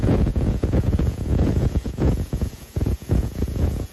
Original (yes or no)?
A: no